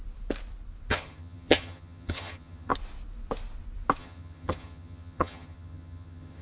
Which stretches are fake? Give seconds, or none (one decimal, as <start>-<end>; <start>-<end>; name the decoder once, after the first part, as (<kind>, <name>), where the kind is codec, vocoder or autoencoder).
0.9-2.7 (vocoder, HiFi-GAN); 4.0-6.4